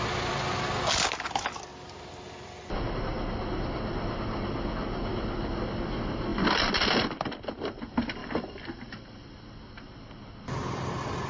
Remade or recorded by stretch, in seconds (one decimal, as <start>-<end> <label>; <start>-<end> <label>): 0.0-8.2 recorded; 8.2-9.4 remade; 9.4-11.3 recorded